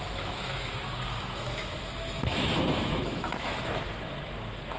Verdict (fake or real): fake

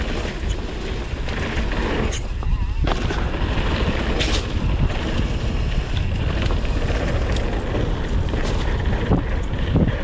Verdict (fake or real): real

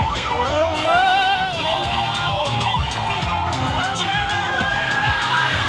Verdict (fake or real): fake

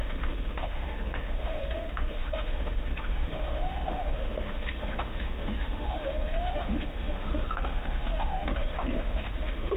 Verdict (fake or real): fake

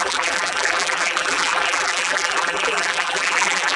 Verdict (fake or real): fake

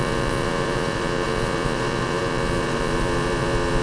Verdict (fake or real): fake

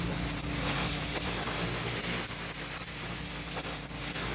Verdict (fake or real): real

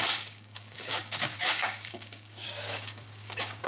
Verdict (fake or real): fake